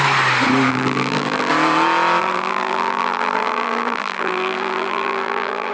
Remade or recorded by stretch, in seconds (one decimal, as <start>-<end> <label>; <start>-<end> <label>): 0.0-0.7 recorded; 0.7-1.5 remade; 1.5-2.2 recorded; 2.2-5.7 remade